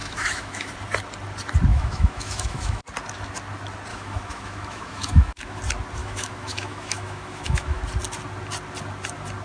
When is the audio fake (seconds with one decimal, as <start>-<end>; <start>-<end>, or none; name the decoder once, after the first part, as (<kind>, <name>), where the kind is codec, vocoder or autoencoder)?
0.0-0.7 (autoencoder, DAC-VAE); 1.7-2.8; 3.9-5.6; 6.0-7.8

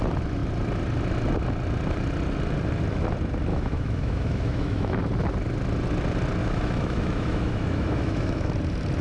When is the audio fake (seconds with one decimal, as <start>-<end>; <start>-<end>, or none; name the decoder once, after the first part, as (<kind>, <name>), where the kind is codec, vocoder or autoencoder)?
3.5-5.0 (autoencoder, DAC-VAE); 6.4-8.5

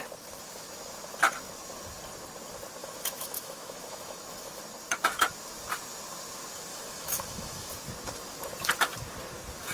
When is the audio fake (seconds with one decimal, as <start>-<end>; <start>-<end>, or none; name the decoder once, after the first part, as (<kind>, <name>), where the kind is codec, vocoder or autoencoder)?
2.8-4.6 (autoencoder, DAC-VAE); 6.7-7.7

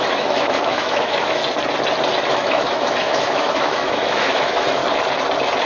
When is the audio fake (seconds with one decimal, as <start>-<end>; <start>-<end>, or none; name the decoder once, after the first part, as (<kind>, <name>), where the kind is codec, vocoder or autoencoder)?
0.0-1.4 (autoencoder, DAC-VAE); 2.3-4.8

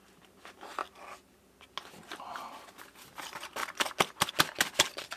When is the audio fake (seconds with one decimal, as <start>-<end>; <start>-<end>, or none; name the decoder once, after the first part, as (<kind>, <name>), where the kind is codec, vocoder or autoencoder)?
none

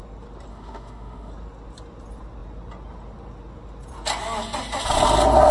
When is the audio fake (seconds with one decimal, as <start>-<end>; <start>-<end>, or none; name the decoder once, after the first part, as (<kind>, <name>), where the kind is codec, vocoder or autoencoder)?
0.5-1.3 (autoencoder, DAC-VAE)

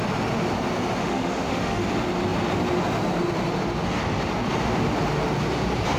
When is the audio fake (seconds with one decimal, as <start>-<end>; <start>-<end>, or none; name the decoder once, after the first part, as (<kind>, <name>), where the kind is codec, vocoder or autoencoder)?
1.0-1.8 (autoencoder, DAC-VAE)

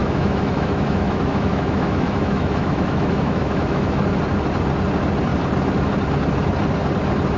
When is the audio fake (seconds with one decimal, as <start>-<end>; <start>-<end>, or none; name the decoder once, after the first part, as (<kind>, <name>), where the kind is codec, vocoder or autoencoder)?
0.0-4.0 (autoencoder, DAC-VAE)